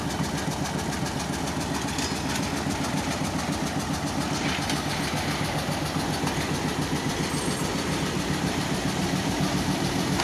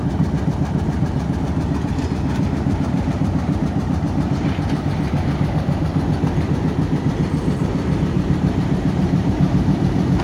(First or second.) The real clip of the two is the first